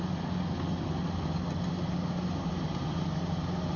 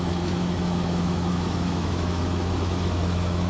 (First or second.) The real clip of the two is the first